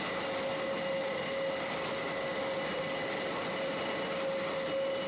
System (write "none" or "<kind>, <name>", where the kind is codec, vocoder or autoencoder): none